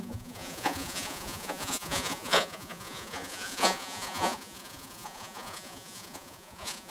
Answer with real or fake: fake